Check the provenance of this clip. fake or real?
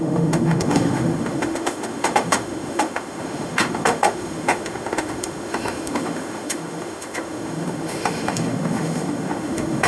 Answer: fake